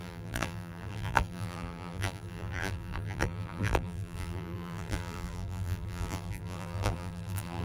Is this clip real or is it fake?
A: fake